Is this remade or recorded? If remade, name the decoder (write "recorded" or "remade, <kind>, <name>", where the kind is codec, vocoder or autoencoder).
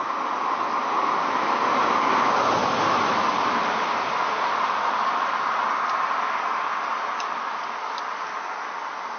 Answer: recorded